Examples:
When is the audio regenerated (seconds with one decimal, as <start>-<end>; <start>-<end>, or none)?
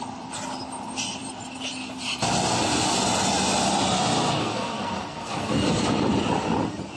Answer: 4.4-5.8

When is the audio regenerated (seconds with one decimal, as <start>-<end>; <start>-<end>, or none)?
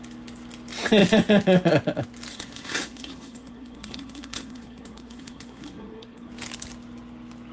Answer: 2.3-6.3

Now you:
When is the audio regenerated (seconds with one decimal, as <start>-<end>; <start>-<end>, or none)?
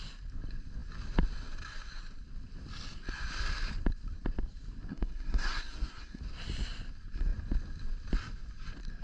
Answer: 4.9-6.2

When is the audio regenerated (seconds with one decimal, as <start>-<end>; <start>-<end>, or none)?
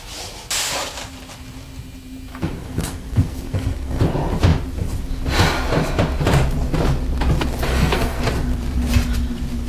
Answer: 2.3-4.0; 7.7-8.2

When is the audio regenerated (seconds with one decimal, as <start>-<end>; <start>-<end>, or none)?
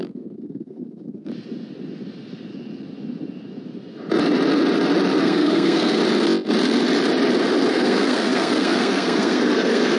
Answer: 0.0-1.3; 5.2-6.0; 7.7-10.0